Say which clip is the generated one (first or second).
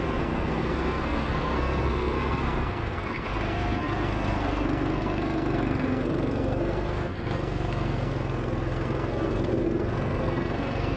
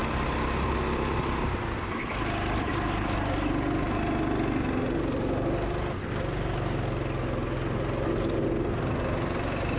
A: first